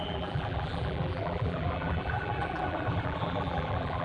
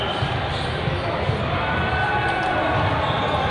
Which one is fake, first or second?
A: first